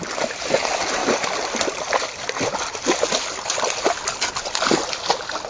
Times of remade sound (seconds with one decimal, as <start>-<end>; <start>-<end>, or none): none